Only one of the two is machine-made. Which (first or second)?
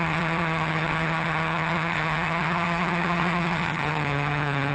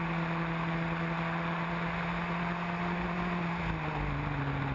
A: first